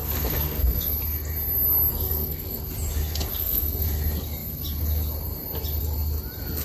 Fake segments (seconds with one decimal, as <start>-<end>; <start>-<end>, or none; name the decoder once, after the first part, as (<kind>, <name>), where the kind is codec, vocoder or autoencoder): 0.0-0.9 (codec, SNAC); 1.9-2.6; 3.3-3.9